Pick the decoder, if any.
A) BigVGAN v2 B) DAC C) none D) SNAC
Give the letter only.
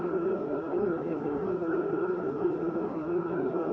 D